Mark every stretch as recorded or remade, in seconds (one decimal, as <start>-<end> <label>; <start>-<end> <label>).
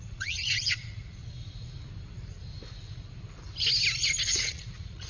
0.0-1.2 remade; 1.2-4.3 recorded; 4.3-5.1 remade